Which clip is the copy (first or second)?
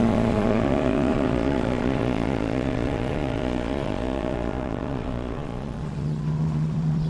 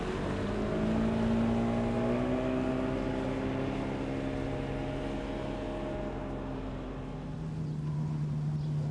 first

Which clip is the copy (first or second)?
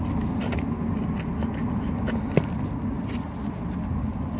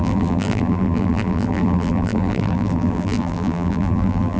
second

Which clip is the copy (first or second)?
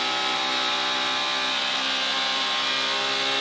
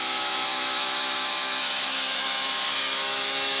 second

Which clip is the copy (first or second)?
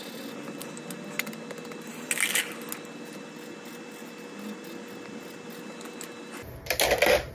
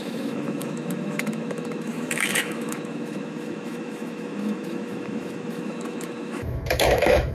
second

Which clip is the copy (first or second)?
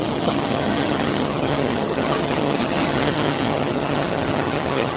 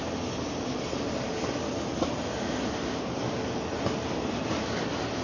first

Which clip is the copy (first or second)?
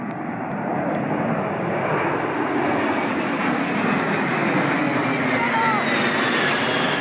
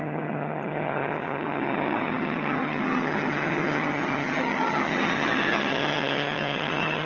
second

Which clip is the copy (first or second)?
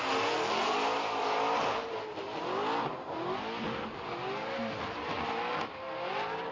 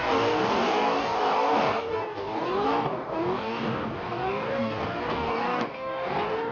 second